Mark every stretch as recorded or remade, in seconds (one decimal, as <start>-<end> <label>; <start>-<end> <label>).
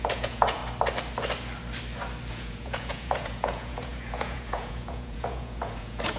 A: 0.0-0.6 remade; 0.6-2.3 recorded; 2.3-6.2 remade